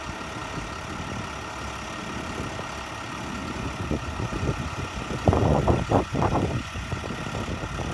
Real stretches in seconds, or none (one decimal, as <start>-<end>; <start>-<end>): 0.0-3.4; 7.0-7.9